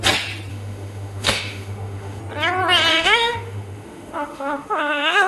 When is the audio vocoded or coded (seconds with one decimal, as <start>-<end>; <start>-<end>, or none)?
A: 0.5-2.2; 2.9-5.3